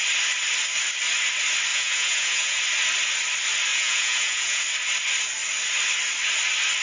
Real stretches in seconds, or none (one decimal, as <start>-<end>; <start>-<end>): 0.0-1.7; 2.6-3.7; 4.6-6.8